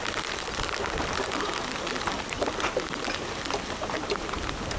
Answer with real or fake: fake